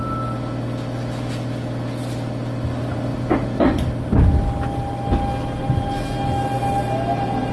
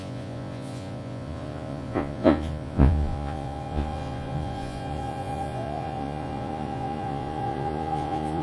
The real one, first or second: first